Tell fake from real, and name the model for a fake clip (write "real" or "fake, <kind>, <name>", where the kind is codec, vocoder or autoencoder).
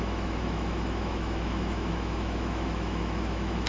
fake, autoencoder, DAC-VAE